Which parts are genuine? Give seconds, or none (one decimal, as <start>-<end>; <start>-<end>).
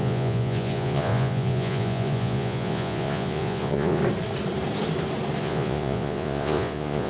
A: 4.0-5.4